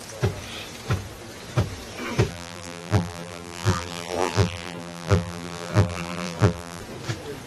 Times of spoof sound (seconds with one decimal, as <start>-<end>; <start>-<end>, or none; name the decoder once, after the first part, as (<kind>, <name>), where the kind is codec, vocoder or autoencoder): 2.3-6.8 (vocoder, BigVGAN v2)